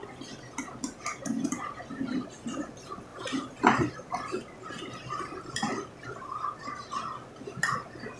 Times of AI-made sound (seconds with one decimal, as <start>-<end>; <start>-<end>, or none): 3.1-3.9